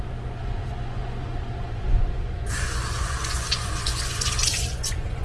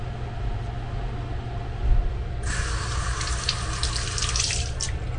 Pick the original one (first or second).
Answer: second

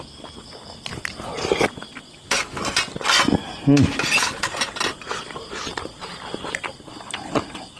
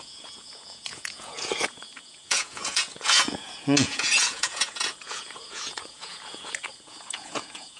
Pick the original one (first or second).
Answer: first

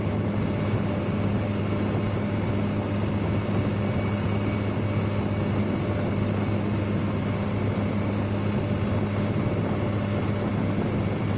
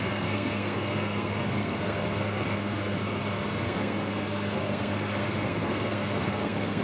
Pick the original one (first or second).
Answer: first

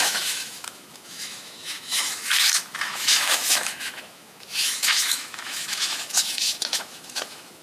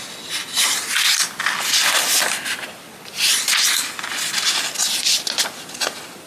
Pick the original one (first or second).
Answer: second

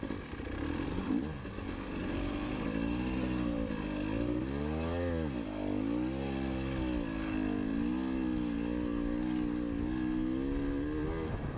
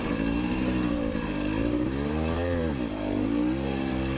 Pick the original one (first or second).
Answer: first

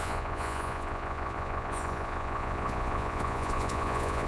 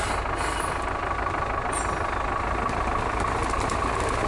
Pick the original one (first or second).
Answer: second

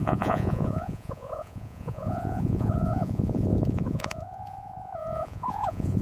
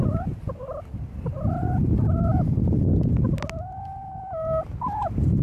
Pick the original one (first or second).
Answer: second